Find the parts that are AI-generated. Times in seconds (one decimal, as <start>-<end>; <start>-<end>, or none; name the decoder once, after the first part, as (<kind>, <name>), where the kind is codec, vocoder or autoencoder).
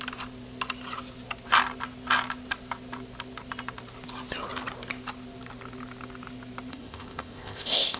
6.7-8.0 (codec, ZipCodec)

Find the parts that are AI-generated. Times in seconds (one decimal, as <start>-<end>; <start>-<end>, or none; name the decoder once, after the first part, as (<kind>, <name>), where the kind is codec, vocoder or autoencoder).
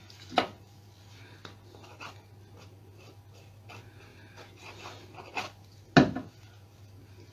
none